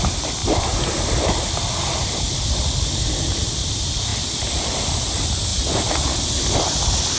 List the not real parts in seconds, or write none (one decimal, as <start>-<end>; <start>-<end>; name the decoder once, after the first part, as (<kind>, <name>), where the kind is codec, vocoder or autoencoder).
0.4-3.6 (vocoder, BigVGAN v2)